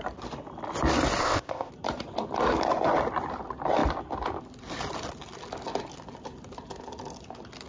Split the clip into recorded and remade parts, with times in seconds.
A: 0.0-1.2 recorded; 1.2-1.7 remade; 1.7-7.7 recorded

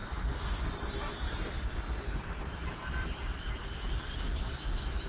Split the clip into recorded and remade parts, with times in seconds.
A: 0.0-1.8 remade; 1.8-5.1 recorded

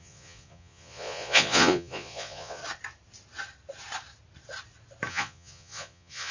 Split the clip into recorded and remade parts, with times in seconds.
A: 0.0-2.6 remade; 2.6-5.1 recorded; 5.1-6.3 remade

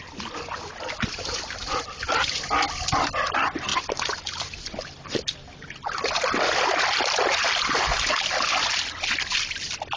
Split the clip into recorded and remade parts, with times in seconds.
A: 0.0-10.0 recorded

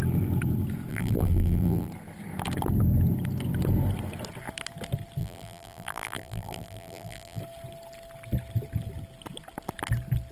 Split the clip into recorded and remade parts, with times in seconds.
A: 0.0-0.9 recorded; 0.9-1.9 remade; 1.9-5.2 recorded; 5.2-7.4 remade; 7.4-10.3 recorded